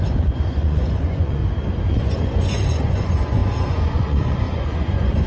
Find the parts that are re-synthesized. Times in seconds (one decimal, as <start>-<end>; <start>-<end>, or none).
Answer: 0.0-1.4; 1.9-5.3

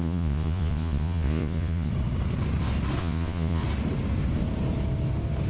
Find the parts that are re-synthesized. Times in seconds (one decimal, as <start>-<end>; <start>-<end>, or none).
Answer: 0.0-1.9; 3.0-3.6